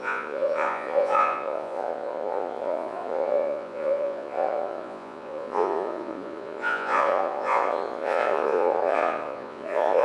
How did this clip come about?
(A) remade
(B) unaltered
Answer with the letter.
A